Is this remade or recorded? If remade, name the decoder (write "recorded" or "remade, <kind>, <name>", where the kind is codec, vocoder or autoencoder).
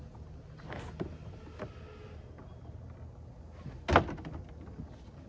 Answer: recorded